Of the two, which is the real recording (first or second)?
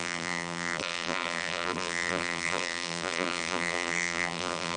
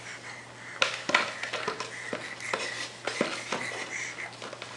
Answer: second